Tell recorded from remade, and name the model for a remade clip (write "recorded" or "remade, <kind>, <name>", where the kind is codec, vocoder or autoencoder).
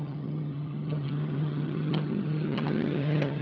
remade, vocoder, HiFi-GAN